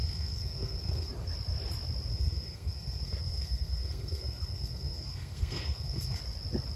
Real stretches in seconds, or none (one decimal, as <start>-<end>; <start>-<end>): 1.1-2.1; 6.2-6.8